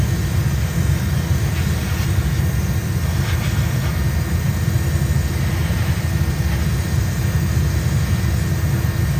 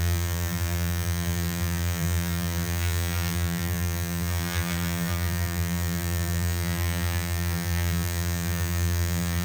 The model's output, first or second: second